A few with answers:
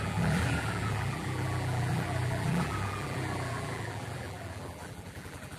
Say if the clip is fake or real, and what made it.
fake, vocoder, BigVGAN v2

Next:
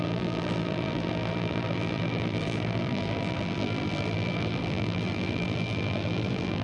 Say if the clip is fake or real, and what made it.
fake, vocoder, BigVGAN v2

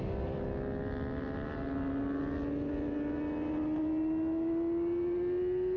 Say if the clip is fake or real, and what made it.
real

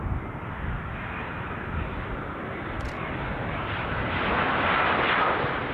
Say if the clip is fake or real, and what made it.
real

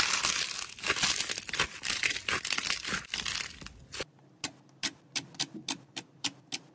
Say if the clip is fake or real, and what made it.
real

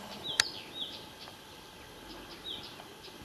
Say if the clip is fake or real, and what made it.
real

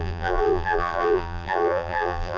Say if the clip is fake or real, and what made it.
fake, vocoder, BigVGAN v2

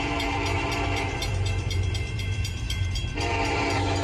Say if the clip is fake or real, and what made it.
fake, vocoder, BigVGAN v2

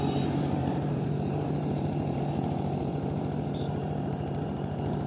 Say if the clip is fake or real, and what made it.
fake, vocoder, BigVGAN v2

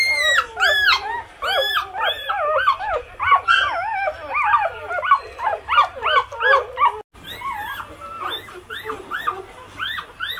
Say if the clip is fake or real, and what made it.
real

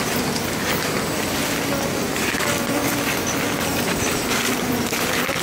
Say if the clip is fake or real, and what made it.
real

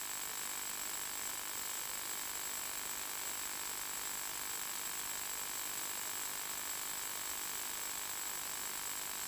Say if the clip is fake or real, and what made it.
fake, vocoder, BigVGAN v2